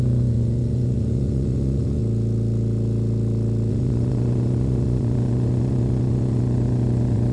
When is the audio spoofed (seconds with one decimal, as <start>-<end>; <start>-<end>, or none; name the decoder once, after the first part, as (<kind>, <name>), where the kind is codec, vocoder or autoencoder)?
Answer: 0.0-2.0 (vocoder, Vocos); 3.7-7.3